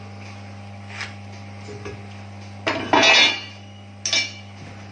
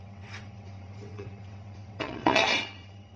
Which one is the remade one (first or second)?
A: second